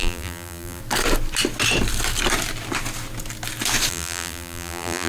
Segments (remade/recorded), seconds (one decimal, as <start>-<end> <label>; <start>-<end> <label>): 0.0-0.8 remade; 0.8-3.9 recorded; 3.9-5.1 remade